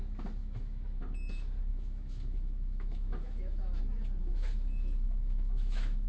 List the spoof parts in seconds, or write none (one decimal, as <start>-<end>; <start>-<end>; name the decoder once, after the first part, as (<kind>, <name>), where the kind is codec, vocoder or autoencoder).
0.4-1.0 (autoencoder, DAC-VAE); 1.7-3.8; 4.2-6.1